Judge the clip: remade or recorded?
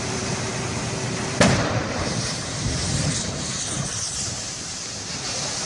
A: remade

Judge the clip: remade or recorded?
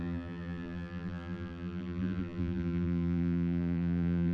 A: remade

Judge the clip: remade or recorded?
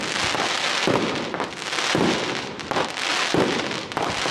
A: recorded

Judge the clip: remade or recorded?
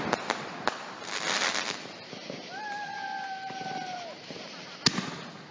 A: recorded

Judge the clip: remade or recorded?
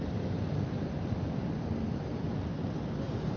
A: remade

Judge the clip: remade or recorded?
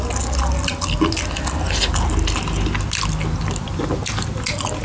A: recorded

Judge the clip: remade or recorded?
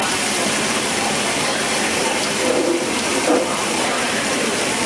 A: remade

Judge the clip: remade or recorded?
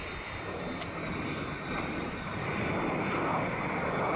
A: recorded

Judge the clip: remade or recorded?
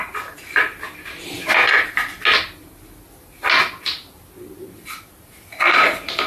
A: recorded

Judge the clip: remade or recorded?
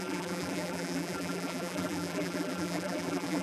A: remade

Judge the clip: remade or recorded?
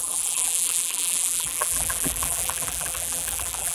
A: remade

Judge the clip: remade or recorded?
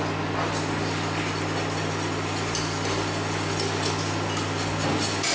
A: recorded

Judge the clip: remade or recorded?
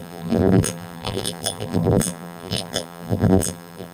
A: remade